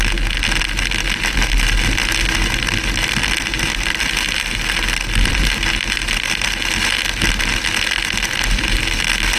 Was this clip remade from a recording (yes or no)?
no